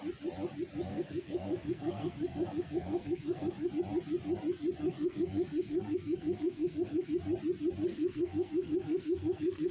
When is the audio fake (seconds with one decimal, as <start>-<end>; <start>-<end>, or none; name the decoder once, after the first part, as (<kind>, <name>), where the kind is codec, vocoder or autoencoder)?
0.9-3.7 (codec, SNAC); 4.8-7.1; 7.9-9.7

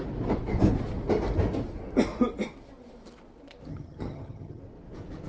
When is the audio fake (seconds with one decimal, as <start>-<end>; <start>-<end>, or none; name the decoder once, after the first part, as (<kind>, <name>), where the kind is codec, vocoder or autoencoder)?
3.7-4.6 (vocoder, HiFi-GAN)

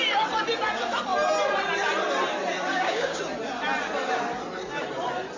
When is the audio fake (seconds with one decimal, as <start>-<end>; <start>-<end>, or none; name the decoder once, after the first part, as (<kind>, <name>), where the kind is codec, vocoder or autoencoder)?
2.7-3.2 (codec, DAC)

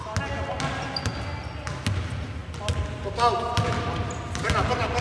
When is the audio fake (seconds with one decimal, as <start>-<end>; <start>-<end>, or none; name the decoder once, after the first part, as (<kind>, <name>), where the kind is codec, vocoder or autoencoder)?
none